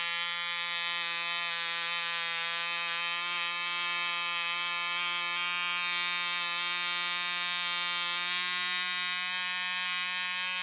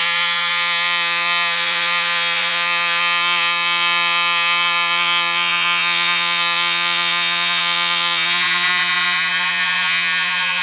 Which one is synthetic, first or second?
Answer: second